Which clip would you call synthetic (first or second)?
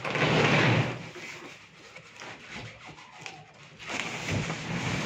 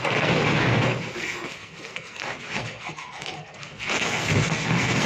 second